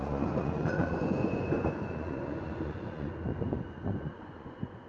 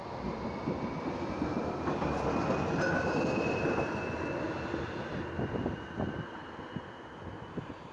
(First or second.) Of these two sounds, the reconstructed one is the first